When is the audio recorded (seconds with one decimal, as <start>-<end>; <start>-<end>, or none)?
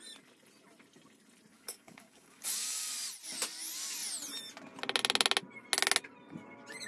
0.0-1.5; 2.9-6.9